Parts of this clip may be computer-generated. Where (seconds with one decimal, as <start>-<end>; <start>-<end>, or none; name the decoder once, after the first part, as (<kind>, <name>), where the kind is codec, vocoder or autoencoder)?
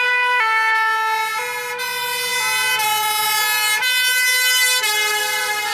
none